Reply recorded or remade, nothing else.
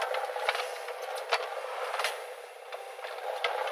recorded